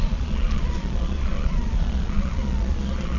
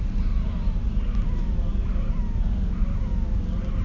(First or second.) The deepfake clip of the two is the first